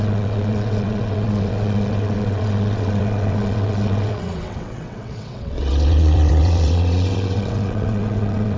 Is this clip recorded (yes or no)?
no